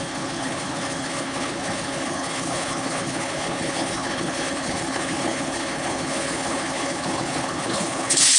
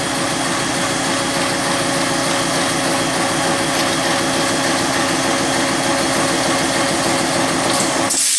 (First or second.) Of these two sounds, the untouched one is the second